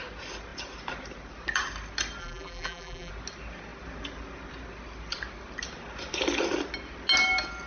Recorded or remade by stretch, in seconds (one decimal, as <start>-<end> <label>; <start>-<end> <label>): 0.0-2.2 recorded; 2.2-3.1 remade; 3.1-7.7 recorded